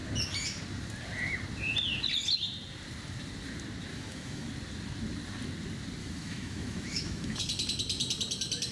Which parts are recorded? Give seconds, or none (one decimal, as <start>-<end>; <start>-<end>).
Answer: 0.0-3.9; 4.5-6.0; 7.4-8.7

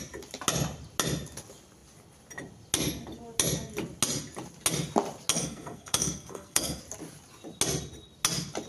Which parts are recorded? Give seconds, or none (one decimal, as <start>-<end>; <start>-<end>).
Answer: 0.0-5.3; 6.8-8.7